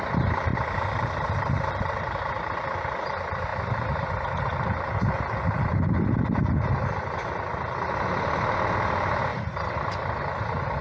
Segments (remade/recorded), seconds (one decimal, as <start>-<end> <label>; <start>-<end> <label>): 0.0-0.5 recorded; 0.5-2.1 remade; 2.1-9.3 recorded; 9.3-10.2 remade; 10.2-10.8 recorded

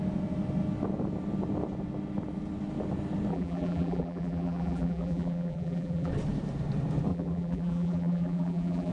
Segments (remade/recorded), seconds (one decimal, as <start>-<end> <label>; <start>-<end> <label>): 0.0-3.3 recorded; 3.3-6.1 remade; 6.1-7.1 recorded; 7.1-8.9 remade

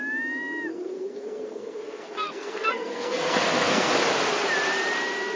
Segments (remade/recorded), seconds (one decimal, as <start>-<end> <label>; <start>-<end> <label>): 0.0-0.7 recorded; 0.7-3.9 remade; 3.9-5.4 recorded

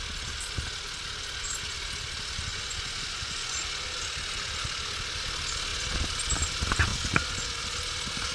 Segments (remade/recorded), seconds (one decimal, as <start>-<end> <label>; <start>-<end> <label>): 0.0-2.5 recorded; 2.5-3.6 remade; 3.6-6.9 recorded; 6.9-7.6 remade; 7.6-8.3 recorded

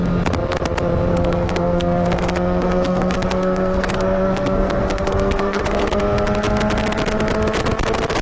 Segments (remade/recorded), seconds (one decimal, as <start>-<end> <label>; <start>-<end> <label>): 0.0-1.1 recorded; 1.1-6.0 remade; 6.0-8.2 recorded

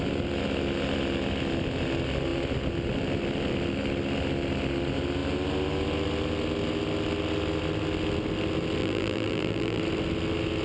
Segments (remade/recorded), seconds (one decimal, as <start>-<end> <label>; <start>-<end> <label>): 0.0-8.8 recorded; 8.8-9.8 remade; 9.8-10.6 recorded

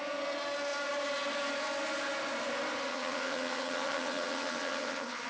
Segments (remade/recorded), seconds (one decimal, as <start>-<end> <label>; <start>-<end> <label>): 0.0-2.9 recorded; 2.9-5.3 remade